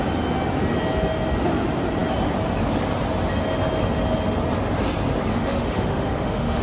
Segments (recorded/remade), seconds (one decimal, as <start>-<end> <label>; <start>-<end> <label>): 0.0-5.3 recorded; 5.3-6.6 remade